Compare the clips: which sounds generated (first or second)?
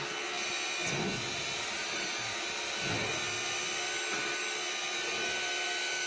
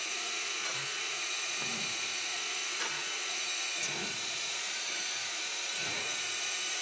second